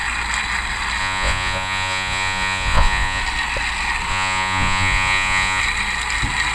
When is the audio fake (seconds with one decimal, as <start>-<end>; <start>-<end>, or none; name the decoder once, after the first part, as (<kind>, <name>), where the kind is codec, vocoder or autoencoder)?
1.0-3.2 (vocoder, Vocos); 4.1-5.6